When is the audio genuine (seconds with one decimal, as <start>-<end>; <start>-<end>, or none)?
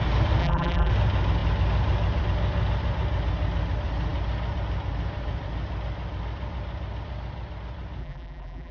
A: 0.0-0.4; 0.9-8.0